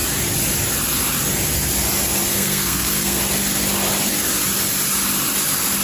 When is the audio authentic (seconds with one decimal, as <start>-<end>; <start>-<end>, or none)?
0.0-2.3; 3.2-5.8